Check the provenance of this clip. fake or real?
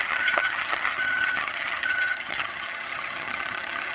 fake